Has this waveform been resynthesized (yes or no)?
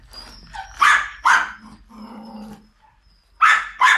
no